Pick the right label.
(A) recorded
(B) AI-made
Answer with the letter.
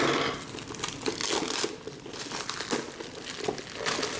A